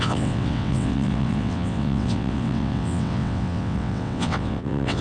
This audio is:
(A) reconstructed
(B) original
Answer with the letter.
A